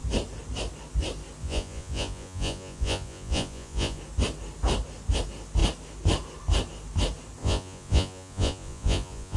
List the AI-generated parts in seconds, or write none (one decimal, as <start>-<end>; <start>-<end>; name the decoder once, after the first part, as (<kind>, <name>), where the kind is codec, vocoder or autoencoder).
1.4-4.0 (vocoder, Vocos); 7.4-9.4